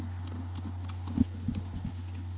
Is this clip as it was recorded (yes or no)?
yes